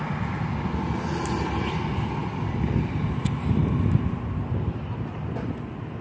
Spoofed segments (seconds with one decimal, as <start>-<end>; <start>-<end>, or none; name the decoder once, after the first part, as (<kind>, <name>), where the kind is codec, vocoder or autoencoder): none